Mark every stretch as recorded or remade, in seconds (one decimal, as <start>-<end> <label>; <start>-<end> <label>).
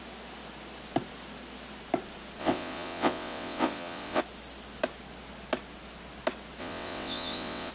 0.0-2.4 recorded; 2.4-4.2 remade; 4.2-6.6 recorded; 6.6-7.7 remade